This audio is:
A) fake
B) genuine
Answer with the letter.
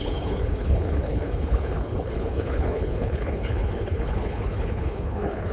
A